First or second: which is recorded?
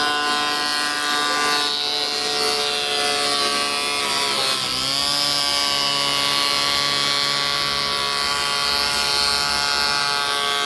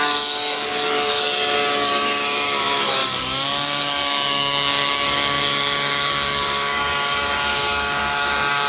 first